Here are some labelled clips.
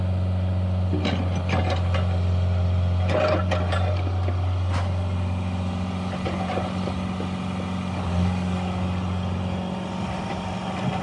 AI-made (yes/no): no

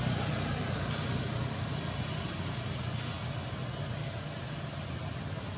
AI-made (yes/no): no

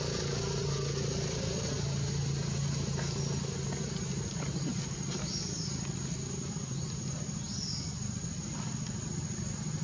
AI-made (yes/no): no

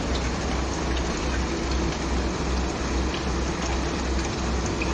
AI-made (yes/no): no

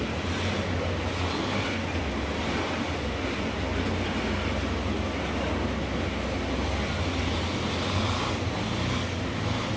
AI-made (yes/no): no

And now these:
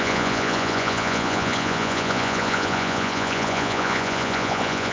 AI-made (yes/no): yes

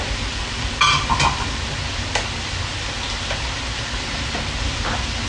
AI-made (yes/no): no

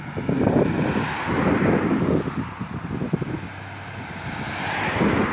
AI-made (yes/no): no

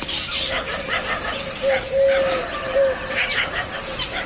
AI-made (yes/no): no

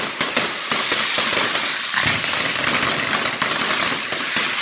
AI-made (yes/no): no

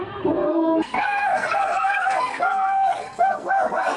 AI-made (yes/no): yes